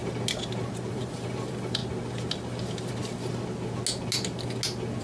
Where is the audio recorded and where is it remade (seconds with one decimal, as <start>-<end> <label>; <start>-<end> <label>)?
0.0-0.9 recorded; 0.9-1.8 remade; 1.8-5.0 recorded